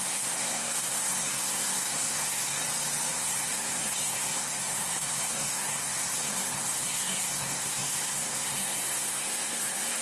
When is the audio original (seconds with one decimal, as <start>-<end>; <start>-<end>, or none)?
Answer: 2.6-3.1